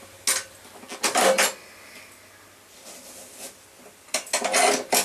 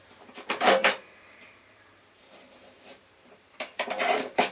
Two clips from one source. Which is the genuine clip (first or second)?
first